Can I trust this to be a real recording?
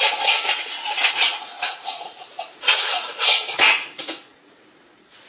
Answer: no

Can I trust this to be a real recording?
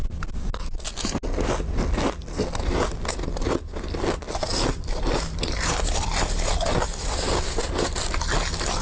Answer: yes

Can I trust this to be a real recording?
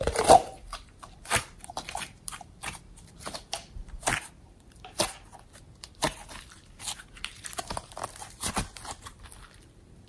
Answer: no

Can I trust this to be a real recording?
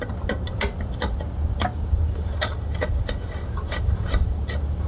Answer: yes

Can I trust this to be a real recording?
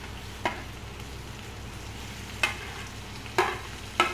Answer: yes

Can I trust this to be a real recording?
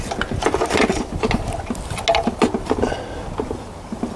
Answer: yes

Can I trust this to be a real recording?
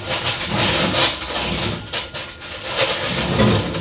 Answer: yes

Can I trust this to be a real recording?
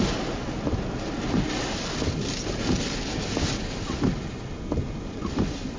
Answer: yes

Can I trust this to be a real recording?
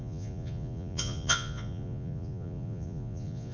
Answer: no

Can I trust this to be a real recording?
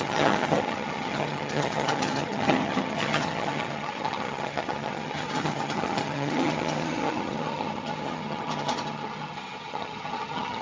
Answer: no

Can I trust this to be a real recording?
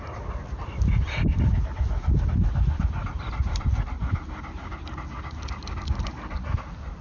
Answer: yes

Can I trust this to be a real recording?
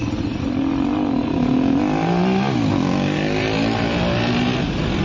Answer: yes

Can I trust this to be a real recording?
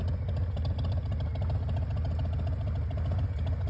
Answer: yes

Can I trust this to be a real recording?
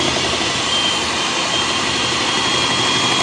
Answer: yes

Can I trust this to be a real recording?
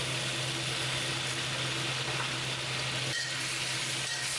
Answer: yes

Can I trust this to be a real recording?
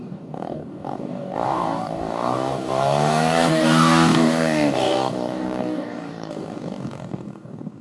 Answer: no